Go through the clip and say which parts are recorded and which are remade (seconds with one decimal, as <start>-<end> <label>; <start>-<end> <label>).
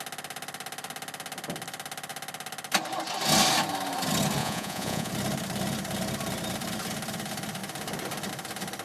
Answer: 0.0-4.4 recorded; 4.4-5.1 remade; 5.1-8.8 recorded